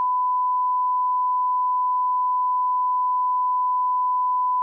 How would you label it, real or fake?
real